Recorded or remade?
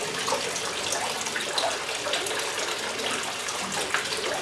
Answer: recorded